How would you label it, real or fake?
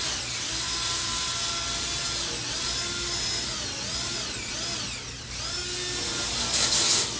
real